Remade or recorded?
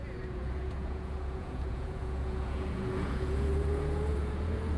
remade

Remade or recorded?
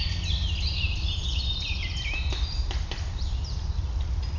recorded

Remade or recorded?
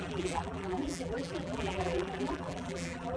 remade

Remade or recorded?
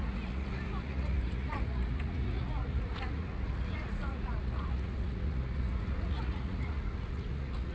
remade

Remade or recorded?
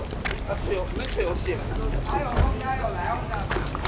recorded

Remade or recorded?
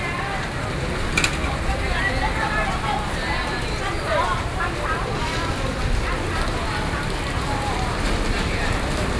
recorded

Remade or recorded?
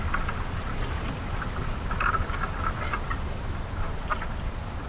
recorded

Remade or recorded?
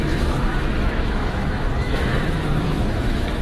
remade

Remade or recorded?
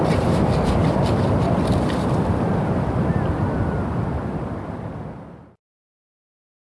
recorded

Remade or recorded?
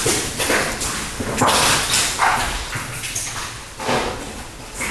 recorded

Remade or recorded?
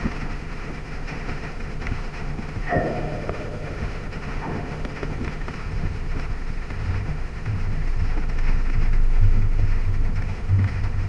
remade